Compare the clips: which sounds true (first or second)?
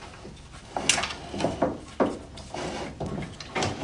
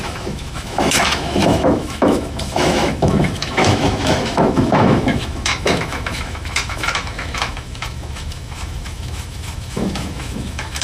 first